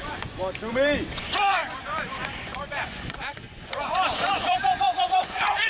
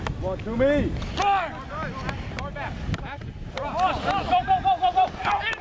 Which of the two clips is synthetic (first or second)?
first